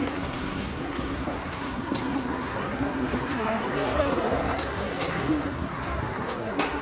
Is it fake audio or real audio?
fake